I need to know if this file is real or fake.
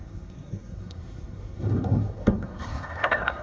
fake